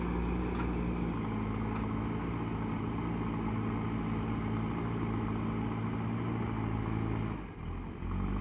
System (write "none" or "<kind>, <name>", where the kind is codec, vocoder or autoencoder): none